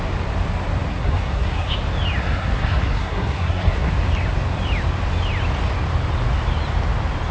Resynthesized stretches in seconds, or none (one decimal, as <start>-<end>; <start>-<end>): 0.9-1.7; 2.2-3.9